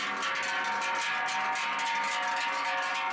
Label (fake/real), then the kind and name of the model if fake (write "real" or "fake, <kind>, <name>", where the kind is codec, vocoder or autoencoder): real